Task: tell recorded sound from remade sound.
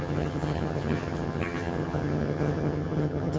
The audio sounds remade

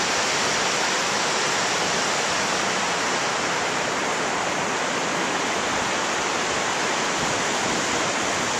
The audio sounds recorded